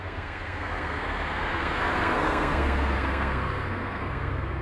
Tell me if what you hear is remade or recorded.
remade